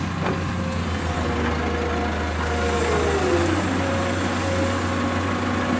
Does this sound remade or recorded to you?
recorded